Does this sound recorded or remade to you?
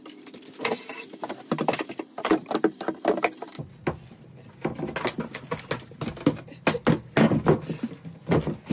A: recorded